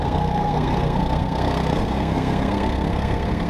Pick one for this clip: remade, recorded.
remade